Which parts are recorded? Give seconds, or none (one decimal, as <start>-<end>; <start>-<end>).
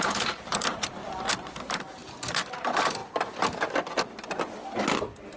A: 1.0-1.6; 3.0-5.4